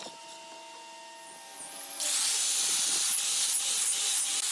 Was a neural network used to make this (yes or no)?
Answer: no